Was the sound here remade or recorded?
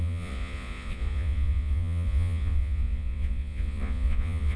remade